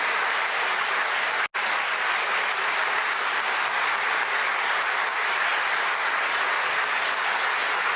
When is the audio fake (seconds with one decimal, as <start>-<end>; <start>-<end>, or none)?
none